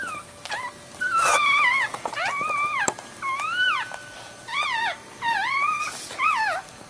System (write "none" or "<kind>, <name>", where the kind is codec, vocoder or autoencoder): vocoder, BigVGAN v2